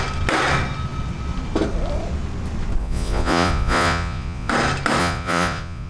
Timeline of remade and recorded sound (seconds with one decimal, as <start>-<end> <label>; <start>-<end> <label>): 0.0-2.8 recorded; 2.8-4.5 remade; 4.5-5.0 recorded; 5.0-5.9 remade